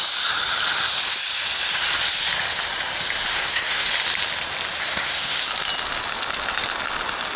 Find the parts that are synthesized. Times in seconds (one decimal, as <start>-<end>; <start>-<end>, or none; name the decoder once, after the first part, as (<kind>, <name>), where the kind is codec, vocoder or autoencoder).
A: 3.3-3.9 (codec, SNAC); 4.8-5.4